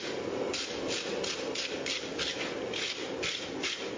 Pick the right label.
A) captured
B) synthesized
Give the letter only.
A